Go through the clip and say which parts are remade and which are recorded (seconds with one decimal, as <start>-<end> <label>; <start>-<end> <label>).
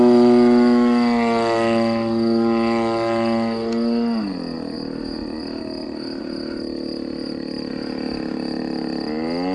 0.0-9.5 recorded